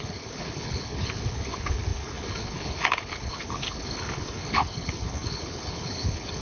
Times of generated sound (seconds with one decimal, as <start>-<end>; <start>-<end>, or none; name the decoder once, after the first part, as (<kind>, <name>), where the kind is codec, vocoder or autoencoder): 0.0-6.4 (codec, HILCodec)